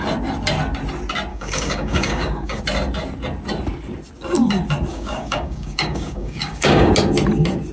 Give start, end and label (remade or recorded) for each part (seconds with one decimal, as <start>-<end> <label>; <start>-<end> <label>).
0.0-1.3 recorded; 1.3-2.6 remade; 2.6-4.9 recorded; 4.9-6.9 remade; 6.9-7.7 recorded